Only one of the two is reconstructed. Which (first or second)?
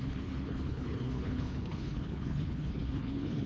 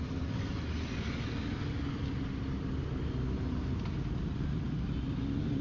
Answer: first